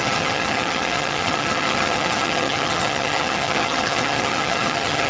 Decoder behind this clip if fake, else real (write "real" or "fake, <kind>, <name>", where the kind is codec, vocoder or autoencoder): fake, vocoder, HiFi-GAN